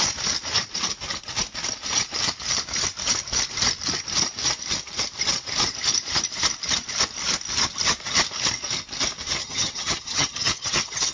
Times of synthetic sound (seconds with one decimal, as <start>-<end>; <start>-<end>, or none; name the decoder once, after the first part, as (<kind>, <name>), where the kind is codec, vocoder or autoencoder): 9.4-11.1 (vocoder, HiFi-GAN)